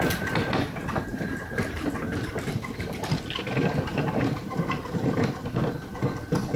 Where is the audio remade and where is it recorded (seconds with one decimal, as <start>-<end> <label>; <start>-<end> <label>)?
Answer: 0.0-1.1 recorded; 1.1-1.9 remade; 1.9-3.9 recorded; 3.9-5.3 remade; 5.3-6.6 recorded